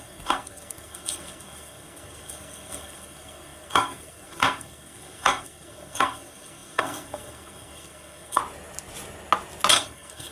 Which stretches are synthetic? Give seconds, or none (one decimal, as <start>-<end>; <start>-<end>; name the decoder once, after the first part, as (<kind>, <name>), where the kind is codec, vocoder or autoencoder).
0.0-8.4 (codec, SNAC); 9.7-10.3